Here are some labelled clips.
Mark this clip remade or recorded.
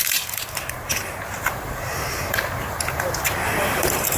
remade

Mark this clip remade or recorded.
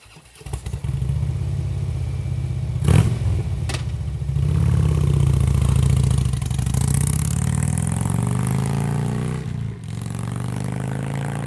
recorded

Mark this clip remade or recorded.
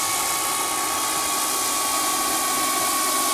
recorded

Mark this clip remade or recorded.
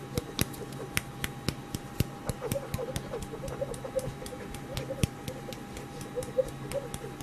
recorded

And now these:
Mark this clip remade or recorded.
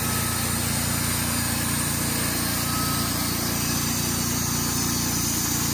recorded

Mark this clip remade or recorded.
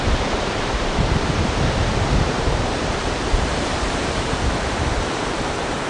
remade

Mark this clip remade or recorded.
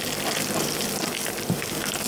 remade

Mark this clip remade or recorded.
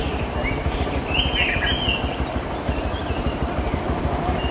remade